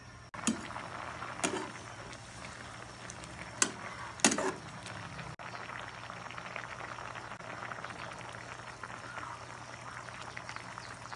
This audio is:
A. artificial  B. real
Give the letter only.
B